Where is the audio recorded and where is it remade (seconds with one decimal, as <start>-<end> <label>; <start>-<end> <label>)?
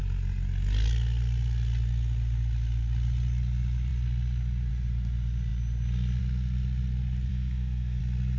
0.0-7.3 recorded; 7.3-8.0 remade; 8.0-8.4 recorded